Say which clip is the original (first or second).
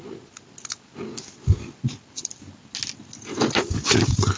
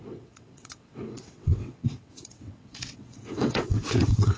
first